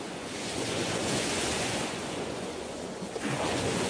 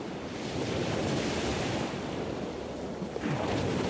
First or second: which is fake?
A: first